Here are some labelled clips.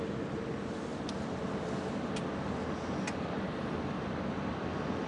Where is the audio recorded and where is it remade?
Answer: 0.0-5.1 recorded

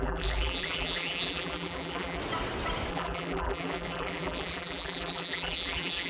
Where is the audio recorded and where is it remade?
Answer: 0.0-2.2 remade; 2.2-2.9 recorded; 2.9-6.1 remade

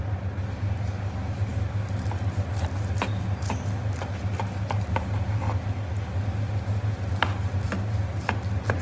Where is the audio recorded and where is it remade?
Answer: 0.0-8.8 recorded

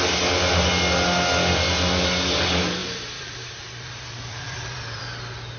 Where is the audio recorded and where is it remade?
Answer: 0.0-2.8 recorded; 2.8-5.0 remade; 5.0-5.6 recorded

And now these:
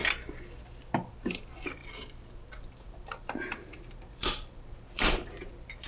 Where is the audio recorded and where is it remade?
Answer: 0.0-1.8 recorded; 1.8-5.3 remade; 5.3-5.9 recorded